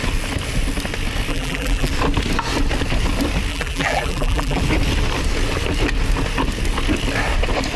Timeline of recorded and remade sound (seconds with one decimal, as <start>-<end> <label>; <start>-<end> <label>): 0.0-1.3 recorded; 1.3-1.9 remade; 1.9-3.5 recorded; 3.5-4.6 remade; 4.6-7.8 recorded